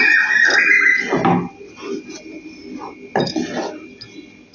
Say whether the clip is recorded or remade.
recorded